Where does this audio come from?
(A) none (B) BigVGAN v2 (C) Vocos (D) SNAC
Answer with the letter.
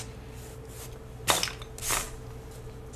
A